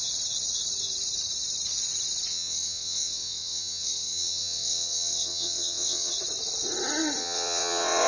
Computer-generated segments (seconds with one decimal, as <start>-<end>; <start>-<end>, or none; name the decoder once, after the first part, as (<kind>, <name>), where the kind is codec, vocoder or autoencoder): 2.3-6.1 (vocoder, WaveNeXt); 7.2-8.1